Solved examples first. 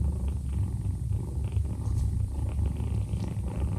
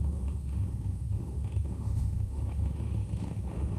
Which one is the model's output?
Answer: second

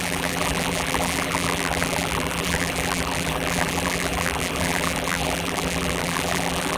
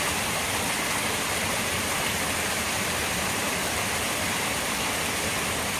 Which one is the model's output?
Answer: first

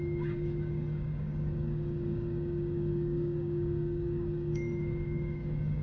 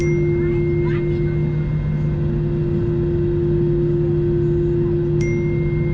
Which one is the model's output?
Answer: first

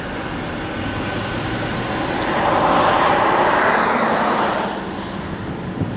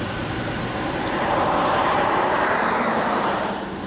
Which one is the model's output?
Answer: second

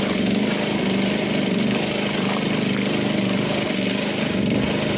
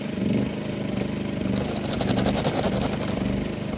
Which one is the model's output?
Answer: first